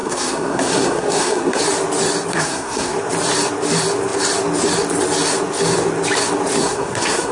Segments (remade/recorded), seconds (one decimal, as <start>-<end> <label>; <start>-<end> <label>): 0.0-1.6 remade; 1.6-2.3 recorded; 2.3-2.9 remade; 2.9-6.6 recorded; 6.6-7.3 remade